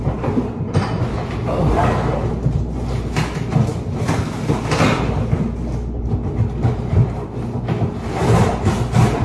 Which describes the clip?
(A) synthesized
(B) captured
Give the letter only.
B